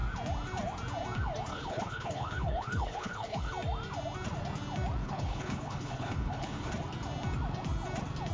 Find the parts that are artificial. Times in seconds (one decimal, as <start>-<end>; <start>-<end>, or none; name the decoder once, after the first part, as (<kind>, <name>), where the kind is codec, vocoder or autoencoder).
1.5-3.5 (codec, HILCodec); 5.0-6.7